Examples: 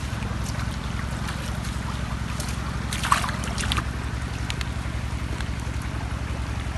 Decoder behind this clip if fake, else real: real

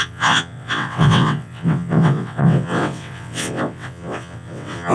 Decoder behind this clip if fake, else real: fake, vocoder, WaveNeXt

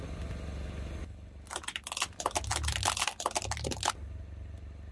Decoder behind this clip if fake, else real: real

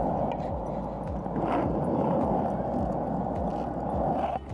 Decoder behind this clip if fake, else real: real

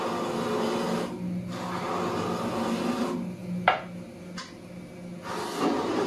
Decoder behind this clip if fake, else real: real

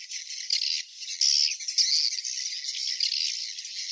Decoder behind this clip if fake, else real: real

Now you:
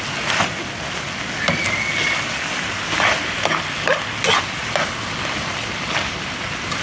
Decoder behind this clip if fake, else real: real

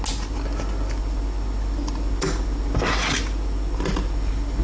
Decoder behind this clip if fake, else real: real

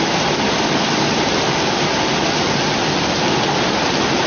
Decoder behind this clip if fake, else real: real